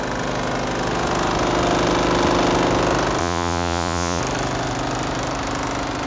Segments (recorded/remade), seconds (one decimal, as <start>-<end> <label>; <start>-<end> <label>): 0.0-3.2 recorded; 3.2-4.2 remade; 4.2-6.1 recorded